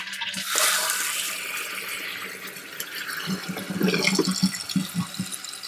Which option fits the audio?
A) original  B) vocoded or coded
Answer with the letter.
A